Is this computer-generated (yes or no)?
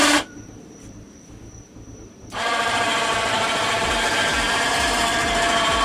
yes